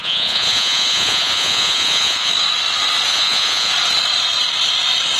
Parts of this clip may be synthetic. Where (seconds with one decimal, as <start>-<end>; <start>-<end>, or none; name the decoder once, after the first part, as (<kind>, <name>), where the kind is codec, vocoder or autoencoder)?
0.0-2.3 (vocoder, Vocos); 3.1-3.7